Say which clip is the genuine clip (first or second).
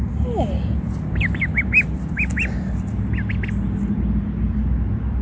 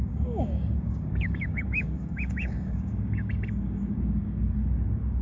first